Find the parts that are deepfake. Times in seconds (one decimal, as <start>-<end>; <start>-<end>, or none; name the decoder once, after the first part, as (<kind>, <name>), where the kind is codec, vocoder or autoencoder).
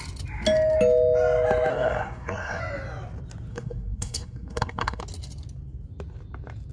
1.7-2.6 (codec, SNAC); 3.5-5.0